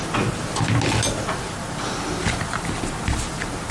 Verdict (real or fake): real